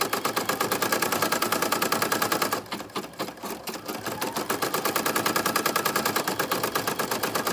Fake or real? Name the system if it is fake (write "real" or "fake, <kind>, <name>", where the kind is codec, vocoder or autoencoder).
real